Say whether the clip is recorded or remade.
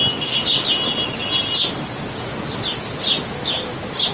recorded